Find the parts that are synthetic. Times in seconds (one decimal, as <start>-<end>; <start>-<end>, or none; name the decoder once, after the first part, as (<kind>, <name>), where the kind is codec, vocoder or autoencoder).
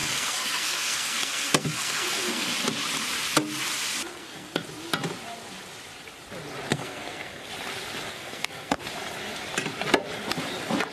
0.0-2.5 (codec, SNAC); 4.1-4.6; 6.7-7.5; 8.1-8.8